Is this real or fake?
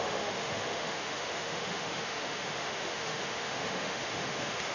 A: fake